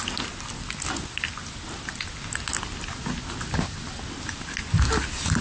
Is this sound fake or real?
real